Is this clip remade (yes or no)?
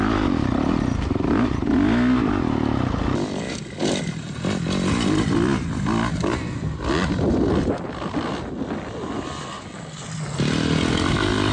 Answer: no